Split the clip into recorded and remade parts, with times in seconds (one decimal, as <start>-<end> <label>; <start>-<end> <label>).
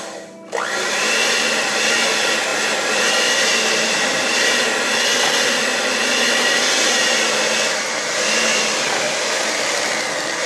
0.0-10.5 recorded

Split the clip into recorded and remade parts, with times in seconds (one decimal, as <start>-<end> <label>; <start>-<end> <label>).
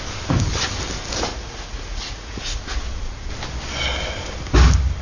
0.0-1.3 recorded; 1.3-3.3 remade; 3.3-5.0 recorded